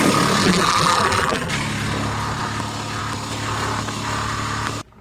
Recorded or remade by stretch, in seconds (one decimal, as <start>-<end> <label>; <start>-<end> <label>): 0.0-0.4 recorded; 0.4-1.5 remade; 1.5-5.0 recorded